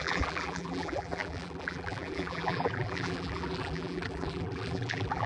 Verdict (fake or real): fake